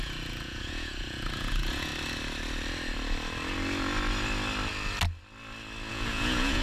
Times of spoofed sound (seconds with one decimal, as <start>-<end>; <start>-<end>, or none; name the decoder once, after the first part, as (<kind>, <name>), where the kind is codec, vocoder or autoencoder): 0.0-1.9 (vocoder, Vocos); 5.9-6.6